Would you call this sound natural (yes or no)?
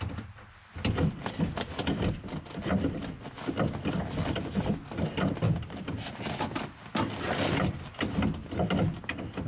yes